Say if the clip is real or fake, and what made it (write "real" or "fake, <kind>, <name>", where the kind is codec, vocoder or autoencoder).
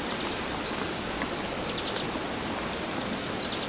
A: real